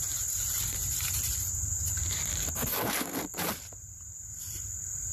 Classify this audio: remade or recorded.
remade